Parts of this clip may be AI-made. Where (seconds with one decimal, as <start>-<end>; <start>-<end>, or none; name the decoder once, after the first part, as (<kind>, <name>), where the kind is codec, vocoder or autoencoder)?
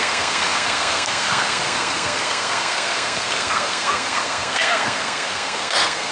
0.0-6.1 (codec, SNAC)